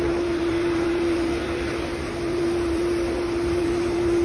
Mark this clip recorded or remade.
remade